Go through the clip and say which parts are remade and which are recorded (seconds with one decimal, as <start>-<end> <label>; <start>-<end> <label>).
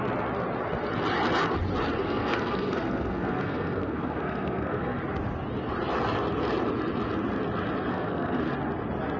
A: 0.0-2.0 recorded; 2.0-5.0 remade; 5.0-7.9 recorded; 7.9-8.4 remade; 8.4-9.2 recorded